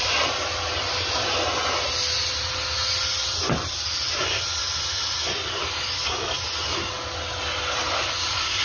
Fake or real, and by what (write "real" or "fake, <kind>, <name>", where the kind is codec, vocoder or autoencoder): real